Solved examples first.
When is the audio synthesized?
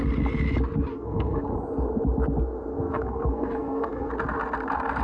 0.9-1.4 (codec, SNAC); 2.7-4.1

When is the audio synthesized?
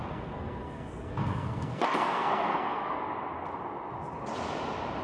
0.0-3.0 (codec, SNAC)